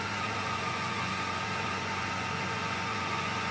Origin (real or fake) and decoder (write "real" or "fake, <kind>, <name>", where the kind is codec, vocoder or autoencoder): fake, vocoder, Vocos